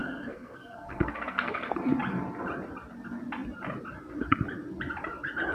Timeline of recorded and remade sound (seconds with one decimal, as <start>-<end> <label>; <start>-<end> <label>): 0.0-1.7 remade; 1.7-5.5 recorded